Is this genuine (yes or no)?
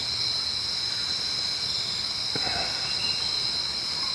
yes